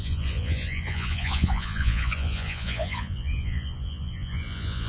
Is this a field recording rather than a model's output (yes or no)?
no